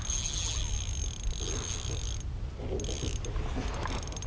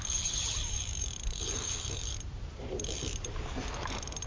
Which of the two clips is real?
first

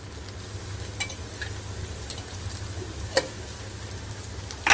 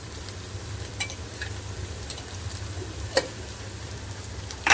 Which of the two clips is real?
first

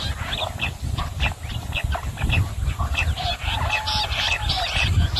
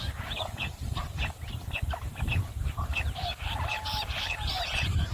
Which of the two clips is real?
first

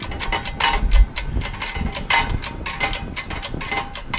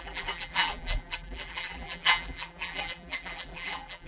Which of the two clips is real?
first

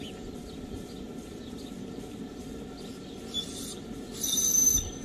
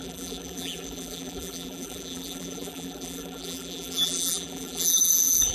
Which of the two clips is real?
first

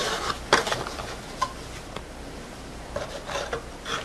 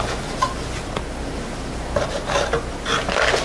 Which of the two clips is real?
second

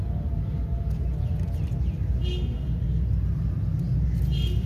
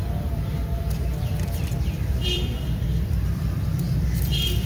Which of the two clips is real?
first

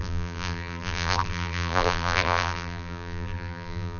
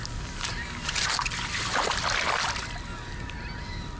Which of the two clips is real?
second